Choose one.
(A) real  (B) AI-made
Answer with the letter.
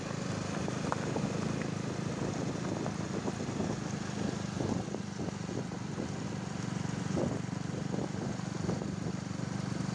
A